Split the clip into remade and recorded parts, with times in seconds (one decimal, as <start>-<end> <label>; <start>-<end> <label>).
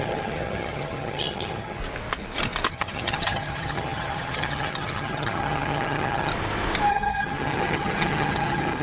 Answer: 0.0-1.8 remade; 1.8-2.7 recorded; 2.7-6.3 remade; 6.3-6.9 recorded; 6.9-8.8 remade